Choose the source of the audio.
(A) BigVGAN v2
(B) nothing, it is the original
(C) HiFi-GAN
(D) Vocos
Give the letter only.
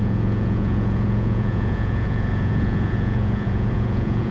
D